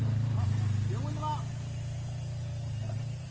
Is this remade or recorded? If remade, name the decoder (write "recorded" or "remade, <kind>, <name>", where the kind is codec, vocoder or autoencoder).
recorded